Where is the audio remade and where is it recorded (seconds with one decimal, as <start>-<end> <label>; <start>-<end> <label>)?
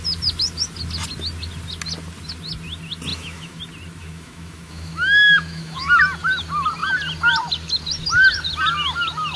0.0-3.1 recorded; 3.1-3.6 remade; 3.6-4.0 recorded; 4.0-6.0 remade; 6.0-9.4 recorded